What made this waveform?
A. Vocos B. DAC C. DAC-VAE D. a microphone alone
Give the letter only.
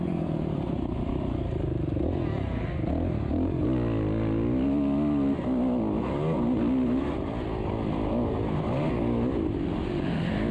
D